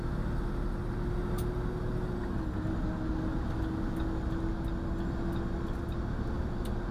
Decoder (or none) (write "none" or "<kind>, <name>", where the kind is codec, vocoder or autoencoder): none